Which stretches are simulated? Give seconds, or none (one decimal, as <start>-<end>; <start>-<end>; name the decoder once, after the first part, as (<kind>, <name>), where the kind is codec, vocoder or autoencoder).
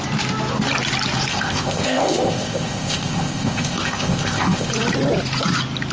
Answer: 1.3-4.7 (codec, ZipCodec)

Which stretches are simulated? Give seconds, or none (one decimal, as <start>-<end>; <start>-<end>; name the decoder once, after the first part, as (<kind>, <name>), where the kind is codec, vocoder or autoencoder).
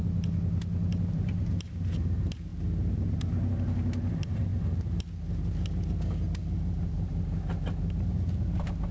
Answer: none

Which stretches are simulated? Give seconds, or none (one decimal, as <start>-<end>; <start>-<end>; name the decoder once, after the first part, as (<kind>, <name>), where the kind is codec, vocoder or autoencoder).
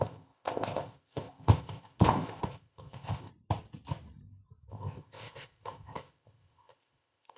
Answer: 0.0-3.3 (codec, ZipCodec); 4.7-7.4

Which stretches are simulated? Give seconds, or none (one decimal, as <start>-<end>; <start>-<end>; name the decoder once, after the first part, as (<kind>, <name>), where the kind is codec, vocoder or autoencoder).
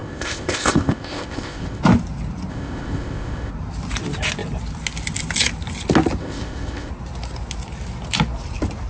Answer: 0.0-1.8 (codec, ZipCodec); 2.5-3.5; 6.2-6.9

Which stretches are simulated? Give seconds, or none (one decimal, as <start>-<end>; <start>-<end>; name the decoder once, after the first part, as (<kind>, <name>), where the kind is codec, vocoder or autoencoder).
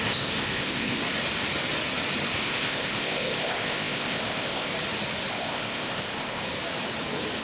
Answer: 0.0-1.0 (codec, ZipCodec); 2.4-4.7; 5.3-6.4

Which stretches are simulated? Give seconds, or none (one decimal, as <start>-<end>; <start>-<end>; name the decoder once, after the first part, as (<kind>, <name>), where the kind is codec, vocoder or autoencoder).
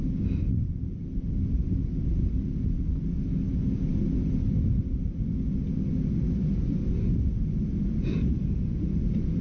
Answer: none